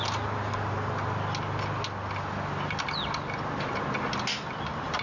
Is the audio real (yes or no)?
yes